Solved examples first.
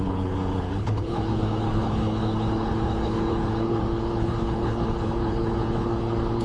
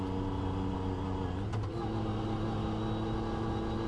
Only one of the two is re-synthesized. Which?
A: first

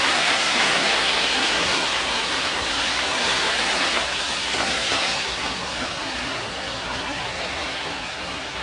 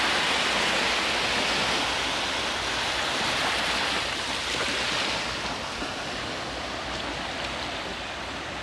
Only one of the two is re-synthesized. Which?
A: first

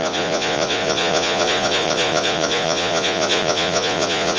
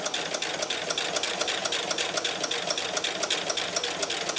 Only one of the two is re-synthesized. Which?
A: first